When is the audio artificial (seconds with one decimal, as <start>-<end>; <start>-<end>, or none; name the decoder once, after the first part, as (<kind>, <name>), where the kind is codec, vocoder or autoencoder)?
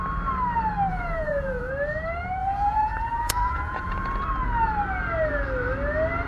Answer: 0.9-1.7 (vocoder, Vocos); 2.4-4.2